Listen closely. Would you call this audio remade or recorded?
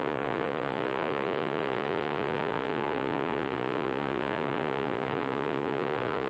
remade